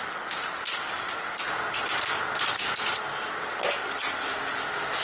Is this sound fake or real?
real